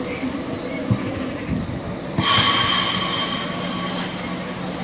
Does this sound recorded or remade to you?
recorded